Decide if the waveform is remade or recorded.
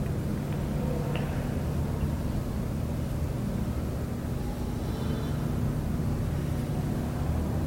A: recorded